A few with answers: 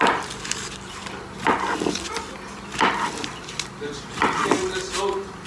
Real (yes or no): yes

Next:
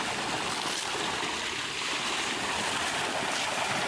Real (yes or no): yes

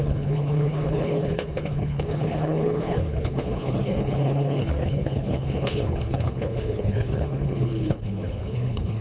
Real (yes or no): no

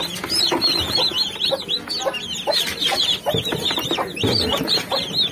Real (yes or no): yes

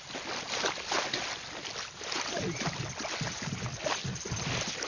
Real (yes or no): yes